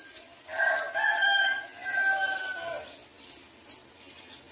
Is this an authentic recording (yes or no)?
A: yes